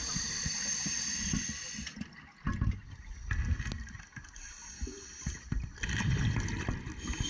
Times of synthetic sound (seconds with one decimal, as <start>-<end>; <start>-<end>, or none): none